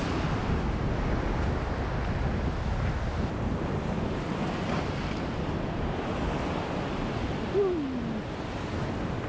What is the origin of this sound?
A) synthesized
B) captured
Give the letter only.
B